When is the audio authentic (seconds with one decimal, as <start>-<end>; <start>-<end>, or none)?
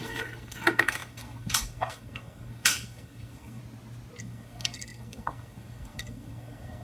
3.6-4.2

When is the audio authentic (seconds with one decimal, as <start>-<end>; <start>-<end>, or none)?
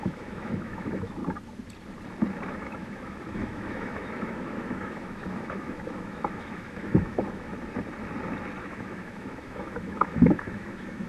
1.2-2.5; 7.5-8.6